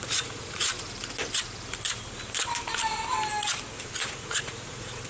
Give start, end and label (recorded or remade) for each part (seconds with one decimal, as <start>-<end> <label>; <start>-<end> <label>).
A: 0.0-0.7 remade; 0.7-3.8 recorded; 3.8-5.1 remade